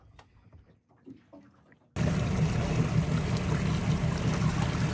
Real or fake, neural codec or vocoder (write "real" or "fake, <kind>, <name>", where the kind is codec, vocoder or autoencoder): real